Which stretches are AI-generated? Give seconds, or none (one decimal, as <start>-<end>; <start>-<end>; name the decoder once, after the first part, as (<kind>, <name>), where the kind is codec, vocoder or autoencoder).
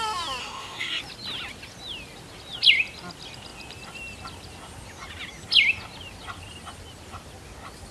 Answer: 0.4-1.0 (codec, SNAC)